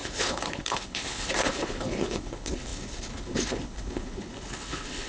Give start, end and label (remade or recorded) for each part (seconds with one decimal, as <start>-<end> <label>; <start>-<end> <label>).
0.0-5.1 remade